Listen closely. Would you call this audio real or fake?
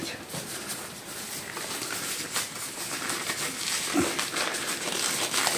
real